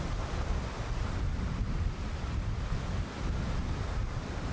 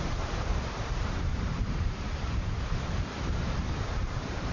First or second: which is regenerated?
second